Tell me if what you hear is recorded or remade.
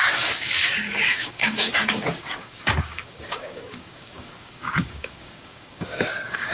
remade